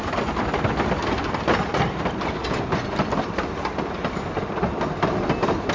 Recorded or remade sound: recorded